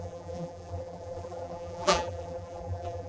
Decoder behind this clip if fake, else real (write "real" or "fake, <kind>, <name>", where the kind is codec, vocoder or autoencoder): fake, vocoder, BigVGAN v2